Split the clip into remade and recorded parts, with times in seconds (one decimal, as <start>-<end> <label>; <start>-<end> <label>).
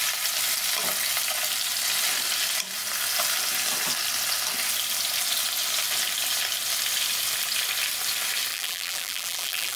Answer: 0.0-8.5 recorded; 8.5-9.8 remade